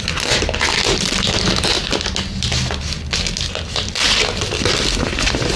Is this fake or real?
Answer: real